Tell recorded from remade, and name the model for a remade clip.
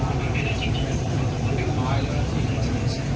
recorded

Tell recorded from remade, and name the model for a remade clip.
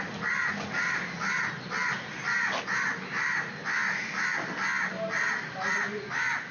recorded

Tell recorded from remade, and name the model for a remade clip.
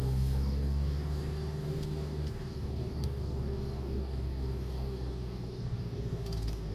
remade, codec, DAC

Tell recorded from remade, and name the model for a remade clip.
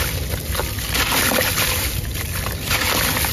recorded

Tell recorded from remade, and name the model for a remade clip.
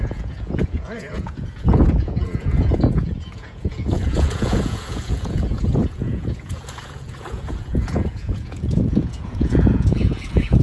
remade, vocoder, Vocos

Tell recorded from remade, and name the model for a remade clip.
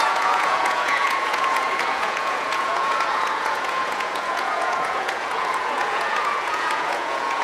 remade, vocoder, Vocos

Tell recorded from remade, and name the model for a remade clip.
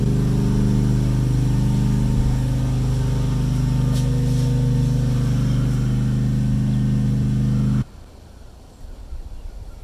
recorded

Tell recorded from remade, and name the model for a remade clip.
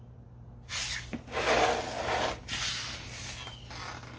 recorded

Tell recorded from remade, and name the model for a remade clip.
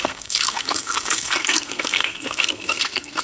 remade, codec, SNAC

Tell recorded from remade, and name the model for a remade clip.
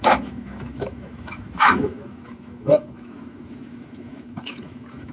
remade, autoencoder, DAC-VAE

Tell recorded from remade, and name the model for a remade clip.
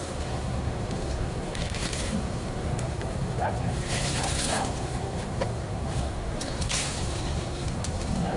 remade, codec, SNAC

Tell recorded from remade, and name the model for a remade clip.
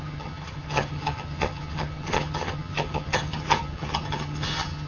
remade, vocoder, HiFi-GAN